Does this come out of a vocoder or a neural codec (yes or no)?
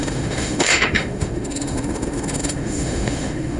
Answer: yes